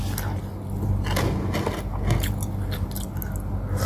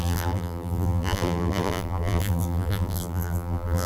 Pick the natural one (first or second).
first